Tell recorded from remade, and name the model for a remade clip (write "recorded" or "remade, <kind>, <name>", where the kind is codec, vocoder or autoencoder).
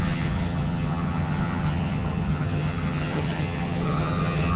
remade, vocoder, HiFi-GAN